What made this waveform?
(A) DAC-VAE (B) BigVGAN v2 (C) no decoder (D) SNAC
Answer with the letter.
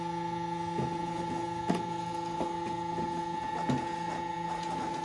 C